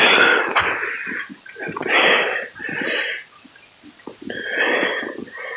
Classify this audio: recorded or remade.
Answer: recorded